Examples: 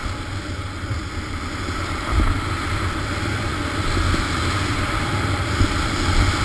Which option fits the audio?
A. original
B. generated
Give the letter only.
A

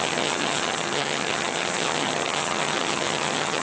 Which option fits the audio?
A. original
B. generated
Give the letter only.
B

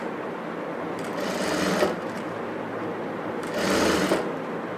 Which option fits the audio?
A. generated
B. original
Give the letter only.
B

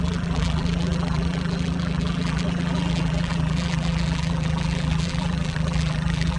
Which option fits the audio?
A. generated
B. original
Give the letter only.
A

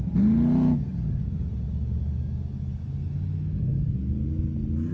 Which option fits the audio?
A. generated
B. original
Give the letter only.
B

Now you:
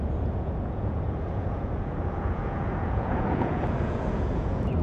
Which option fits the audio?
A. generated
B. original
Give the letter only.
A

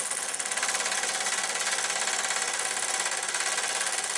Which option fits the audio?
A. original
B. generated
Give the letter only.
A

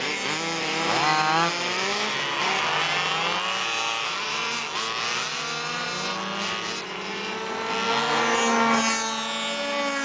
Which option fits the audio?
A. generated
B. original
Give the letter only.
B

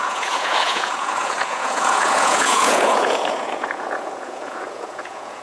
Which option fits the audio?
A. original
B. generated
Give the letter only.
B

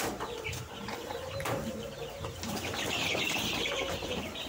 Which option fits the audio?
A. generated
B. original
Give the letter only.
A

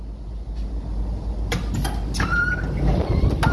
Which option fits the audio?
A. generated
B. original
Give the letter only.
B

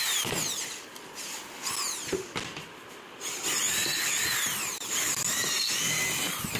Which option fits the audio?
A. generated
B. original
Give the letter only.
B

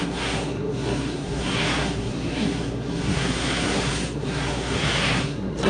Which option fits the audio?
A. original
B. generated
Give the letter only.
B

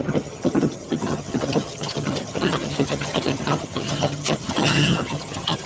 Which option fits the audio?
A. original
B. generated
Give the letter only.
B